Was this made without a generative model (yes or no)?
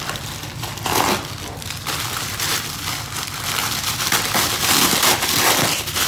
no